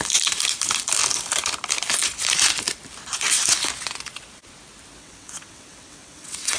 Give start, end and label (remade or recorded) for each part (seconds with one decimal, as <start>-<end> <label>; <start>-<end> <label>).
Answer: 0.0-5.0 recorded; 5.0-6.6 remade